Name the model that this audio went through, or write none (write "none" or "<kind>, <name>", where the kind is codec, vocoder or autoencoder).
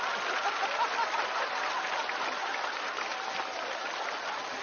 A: none